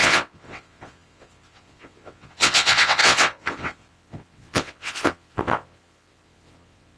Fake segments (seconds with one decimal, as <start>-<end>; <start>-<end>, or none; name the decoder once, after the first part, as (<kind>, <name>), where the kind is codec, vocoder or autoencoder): 0.0-7.0 (vocoder, WaveNeXt)